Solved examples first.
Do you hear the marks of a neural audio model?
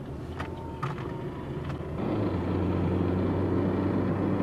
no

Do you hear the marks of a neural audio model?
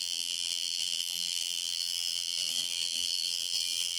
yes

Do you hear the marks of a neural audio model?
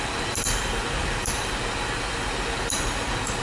no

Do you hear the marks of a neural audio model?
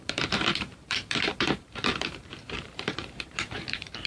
yes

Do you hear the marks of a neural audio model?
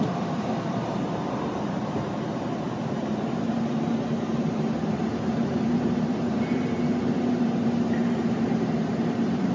yes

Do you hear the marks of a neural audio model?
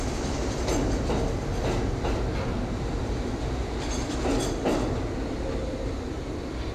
no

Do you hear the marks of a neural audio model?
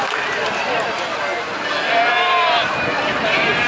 no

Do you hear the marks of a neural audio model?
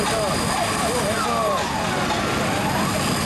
no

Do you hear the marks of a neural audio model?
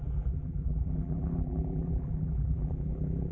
yes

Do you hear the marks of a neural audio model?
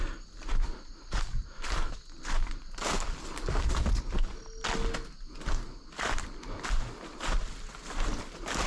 no